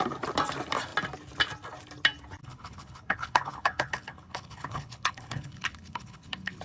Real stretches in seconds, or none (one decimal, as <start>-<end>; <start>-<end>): 0.0-2.4